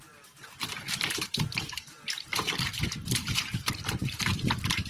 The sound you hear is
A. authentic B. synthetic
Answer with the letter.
B